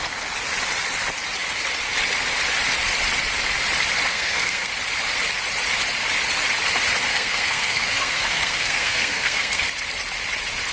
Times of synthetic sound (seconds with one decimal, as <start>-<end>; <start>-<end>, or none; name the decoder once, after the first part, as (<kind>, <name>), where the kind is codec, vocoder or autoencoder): 4.1-4.7 (codec, SNAC); 7.1-9.6